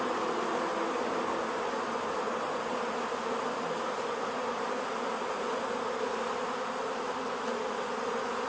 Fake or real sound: real